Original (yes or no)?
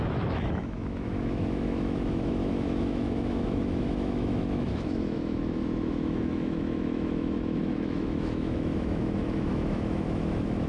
no